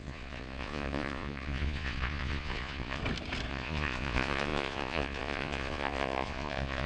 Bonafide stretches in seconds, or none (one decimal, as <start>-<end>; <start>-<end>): 3.0-3.5